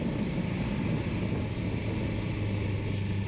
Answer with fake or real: real